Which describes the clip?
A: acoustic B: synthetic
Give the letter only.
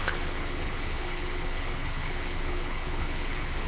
B